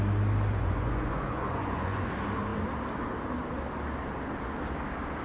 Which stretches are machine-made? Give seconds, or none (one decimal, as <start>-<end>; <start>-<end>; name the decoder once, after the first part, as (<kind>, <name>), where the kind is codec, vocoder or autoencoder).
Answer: 0.5-2.1 (vocoder, Vocos)